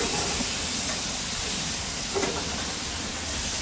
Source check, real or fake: real